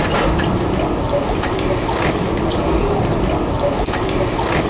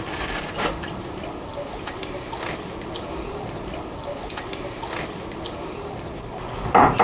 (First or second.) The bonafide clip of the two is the first